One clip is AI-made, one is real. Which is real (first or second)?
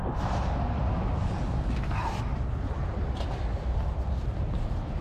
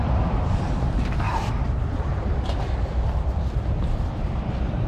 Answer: first